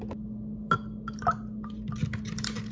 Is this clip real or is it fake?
real